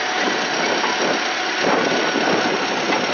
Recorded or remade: recorded